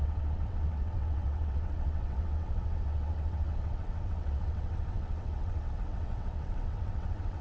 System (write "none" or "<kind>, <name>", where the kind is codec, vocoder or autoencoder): vocoder, WaveNeXt